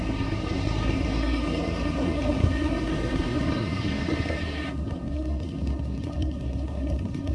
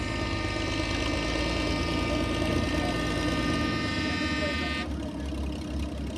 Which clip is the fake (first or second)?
first